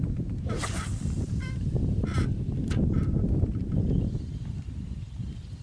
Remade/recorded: recorded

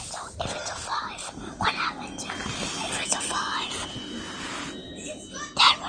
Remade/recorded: recorded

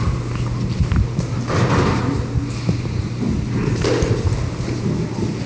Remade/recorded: recorded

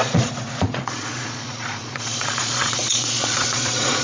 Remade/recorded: remade